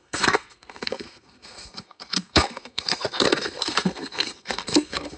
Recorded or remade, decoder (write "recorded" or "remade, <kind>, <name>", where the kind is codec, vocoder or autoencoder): remade, codec, SNAC